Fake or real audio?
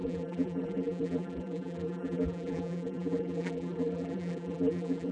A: fake